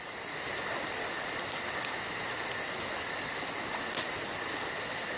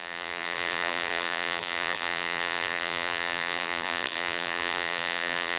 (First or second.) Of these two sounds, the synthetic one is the second